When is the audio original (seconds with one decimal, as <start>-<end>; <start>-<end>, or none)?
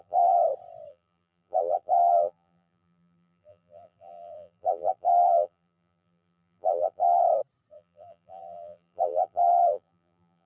0.4-0.9; 7.2-7.7